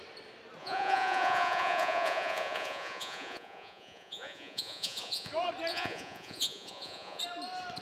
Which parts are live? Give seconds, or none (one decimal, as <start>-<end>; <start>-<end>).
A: 0.0-0.6; 5.3-5.7; 7.2-7.8